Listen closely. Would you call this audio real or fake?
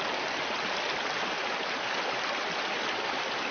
fake